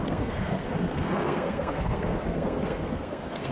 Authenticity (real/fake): fake